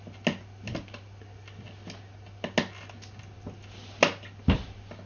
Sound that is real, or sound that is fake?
real